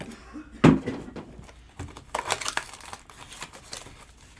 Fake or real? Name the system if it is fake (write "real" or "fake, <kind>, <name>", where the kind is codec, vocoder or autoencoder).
real